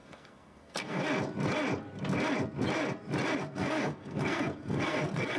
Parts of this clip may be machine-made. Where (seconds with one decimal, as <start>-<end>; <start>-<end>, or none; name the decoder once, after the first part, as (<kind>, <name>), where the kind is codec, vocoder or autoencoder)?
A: 0.0-1.0 (codec, SNAC); 3.4-5.4